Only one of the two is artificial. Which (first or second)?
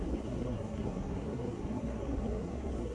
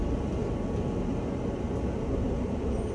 first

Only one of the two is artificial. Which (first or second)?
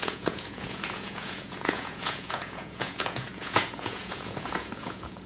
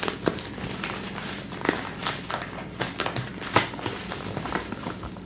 first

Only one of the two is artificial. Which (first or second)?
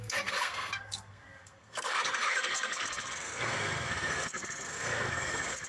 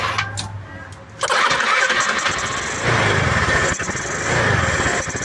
first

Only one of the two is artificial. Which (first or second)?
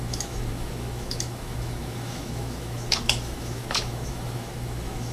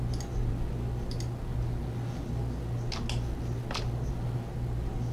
first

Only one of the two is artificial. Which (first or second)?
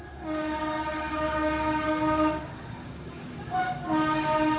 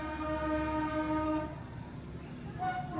first